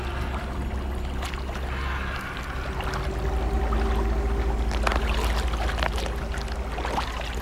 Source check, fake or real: real